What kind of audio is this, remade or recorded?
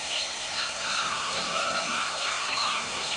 remade